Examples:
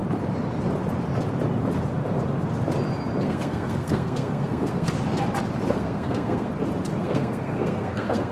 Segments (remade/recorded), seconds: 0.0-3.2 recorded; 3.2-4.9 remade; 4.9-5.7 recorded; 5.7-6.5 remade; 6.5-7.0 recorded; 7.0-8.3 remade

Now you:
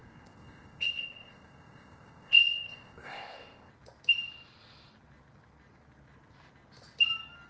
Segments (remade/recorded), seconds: 0.0-3.7 remade; 3.7-7.5 recorded

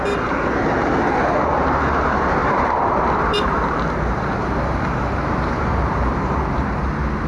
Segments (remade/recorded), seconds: 0.0-2.4 recorded; 2.4-6.8 remade; 6.8-7.3 recorded

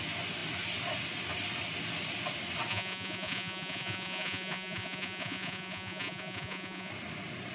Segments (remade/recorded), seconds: 0.0-2.7 recorded; 2.7-6.9 remade; 6.9-7.5 recorded

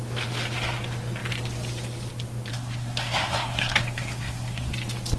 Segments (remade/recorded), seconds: 0.0-2.5 recorded; 2.5-4.7 remade; 4.7-5.2 recorded

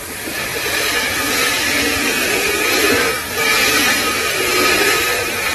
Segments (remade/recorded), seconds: 0.0-0.5 recorded; 0.5-3.8 remade; 3.8-5.5 recorded

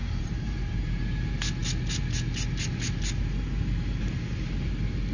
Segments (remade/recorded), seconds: 0.0-1.0 remade; 1.0-5.1 recorded

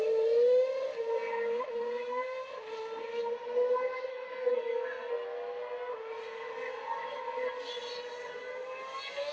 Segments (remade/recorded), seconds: 0.0-4.1 recorded; 4.1-5.1 remade; 5.1-9.3 recorded